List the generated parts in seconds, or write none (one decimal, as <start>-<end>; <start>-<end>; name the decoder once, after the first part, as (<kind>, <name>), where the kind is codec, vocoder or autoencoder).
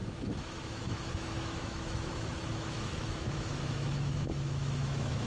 0.0-5.3 (autoencoder, DAC-VAE)